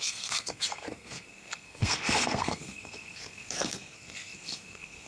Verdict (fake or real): fake